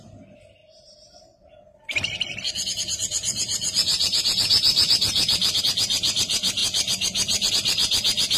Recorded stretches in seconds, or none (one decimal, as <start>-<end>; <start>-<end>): 0.0-0.6; 5.6-8.4